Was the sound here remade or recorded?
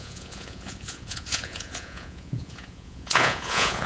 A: remade